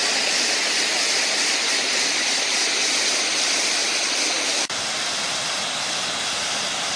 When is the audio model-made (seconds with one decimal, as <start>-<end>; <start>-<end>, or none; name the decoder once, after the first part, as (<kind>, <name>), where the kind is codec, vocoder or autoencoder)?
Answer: 3.8-5.4 (vocoder, BigVGAN v2)